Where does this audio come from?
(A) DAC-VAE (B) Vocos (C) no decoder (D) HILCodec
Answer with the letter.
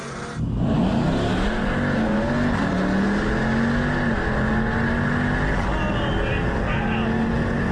C